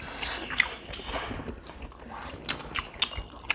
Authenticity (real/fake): real